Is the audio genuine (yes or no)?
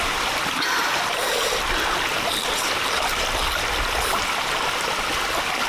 yes